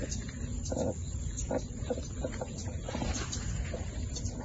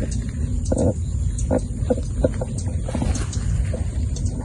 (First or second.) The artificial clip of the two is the first